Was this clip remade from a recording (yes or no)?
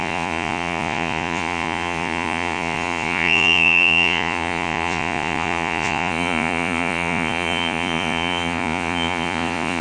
yes